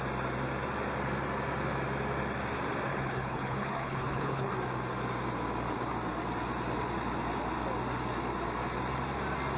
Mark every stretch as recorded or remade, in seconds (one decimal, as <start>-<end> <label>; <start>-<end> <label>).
0.0-2.9 recorded; 2.9-4.5 remade; 4.5-9.6 recorded